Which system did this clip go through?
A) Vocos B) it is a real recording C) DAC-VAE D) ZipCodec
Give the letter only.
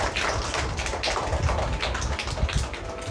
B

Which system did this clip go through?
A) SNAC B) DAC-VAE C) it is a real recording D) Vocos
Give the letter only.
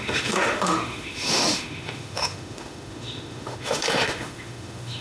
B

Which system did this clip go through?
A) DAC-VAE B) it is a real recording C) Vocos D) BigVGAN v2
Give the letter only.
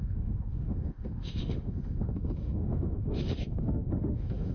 A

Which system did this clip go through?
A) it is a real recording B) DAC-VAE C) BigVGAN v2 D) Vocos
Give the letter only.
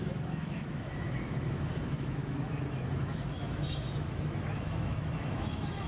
B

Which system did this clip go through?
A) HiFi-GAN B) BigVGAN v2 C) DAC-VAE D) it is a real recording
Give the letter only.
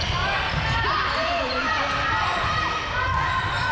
D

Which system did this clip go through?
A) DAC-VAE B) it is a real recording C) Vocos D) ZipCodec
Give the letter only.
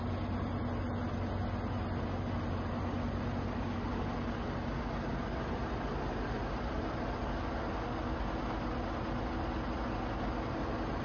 B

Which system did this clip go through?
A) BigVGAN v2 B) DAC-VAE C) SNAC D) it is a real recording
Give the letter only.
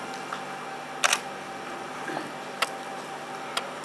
D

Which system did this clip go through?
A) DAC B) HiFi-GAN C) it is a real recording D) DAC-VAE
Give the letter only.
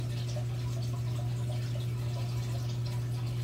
C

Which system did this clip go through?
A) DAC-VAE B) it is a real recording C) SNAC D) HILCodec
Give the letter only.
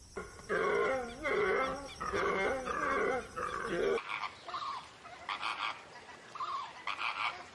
B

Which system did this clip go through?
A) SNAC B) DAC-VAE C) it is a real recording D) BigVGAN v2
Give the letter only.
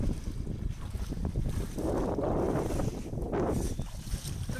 C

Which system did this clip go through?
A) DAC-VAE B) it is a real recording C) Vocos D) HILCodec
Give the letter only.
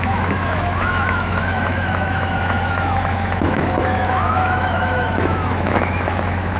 A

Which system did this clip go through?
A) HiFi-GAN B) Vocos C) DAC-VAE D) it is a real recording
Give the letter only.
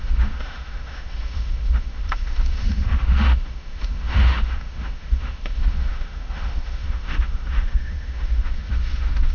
C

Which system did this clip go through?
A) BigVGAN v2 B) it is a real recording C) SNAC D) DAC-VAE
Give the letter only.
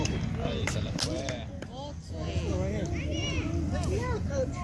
B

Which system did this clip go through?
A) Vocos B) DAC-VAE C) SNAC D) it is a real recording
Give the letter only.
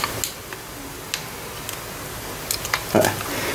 D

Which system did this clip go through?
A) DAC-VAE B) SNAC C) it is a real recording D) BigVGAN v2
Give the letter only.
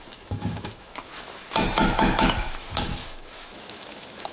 A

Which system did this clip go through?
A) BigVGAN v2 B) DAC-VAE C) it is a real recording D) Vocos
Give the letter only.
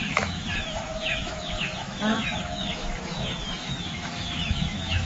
B